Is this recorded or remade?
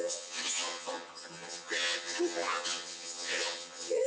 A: remade